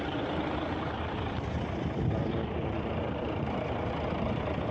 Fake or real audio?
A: fake